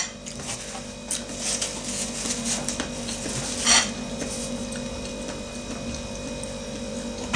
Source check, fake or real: real